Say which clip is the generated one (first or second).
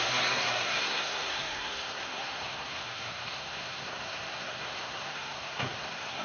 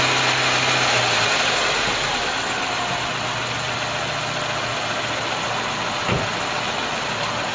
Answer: first